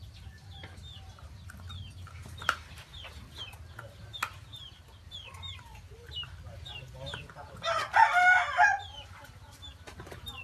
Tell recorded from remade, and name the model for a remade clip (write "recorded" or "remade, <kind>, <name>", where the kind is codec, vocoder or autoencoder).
recorded